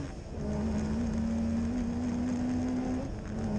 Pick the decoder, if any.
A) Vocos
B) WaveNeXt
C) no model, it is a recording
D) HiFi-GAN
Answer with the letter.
C